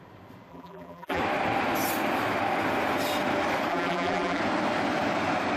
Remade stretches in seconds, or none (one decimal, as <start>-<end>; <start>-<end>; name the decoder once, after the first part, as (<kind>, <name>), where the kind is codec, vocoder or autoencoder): 0.5-1.2 (vocoder, BigVGAN v2); 3.7-4.4

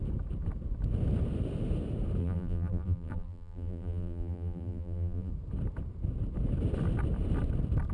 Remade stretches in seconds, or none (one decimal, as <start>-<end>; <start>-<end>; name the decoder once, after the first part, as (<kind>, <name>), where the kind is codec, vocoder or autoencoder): 2.2-5.3 (vocoder, BigVGAN v2)

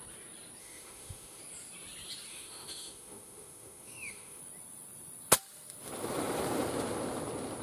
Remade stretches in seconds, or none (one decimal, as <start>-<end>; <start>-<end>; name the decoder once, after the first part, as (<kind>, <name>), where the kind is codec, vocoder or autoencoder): 0.6-1.4 (autoencoder, DAC-VAE); 2.3-4.4

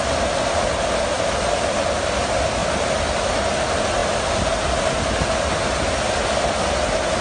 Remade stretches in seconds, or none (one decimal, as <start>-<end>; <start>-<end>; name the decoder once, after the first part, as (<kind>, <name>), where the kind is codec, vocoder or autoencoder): none

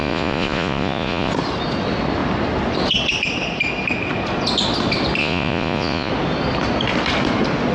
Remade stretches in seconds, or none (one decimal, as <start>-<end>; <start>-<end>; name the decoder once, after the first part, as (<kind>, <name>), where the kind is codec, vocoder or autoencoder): 0.0-1.3 (vocoder, Vocos); 5.2-6.1